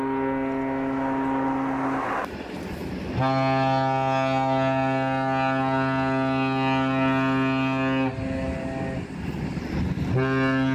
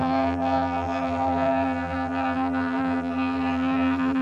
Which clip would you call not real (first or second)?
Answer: second